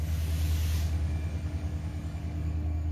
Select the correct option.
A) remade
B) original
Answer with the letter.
A